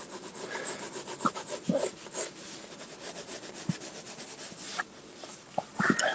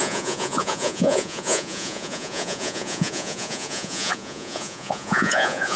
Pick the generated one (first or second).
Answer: second